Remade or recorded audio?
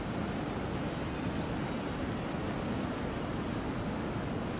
recorded